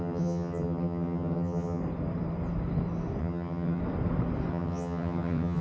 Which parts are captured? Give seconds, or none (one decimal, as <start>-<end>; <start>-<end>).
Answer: 1.8-3.2; 3.8-4.5